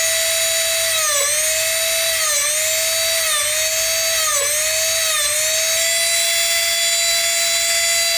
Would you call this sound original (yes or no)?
yes